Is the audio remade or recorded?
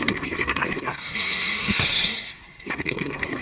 remade